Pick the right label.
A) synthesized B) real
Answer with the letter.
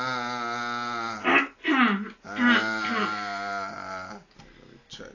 B